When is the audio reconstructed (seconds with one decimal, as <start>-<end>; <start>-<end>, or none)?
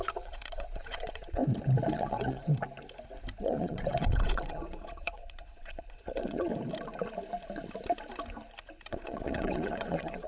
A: 0.0-1.4; 1.9-2.5; 3.4-6.5; 8.9-10.3